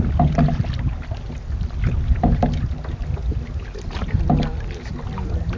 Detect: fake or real real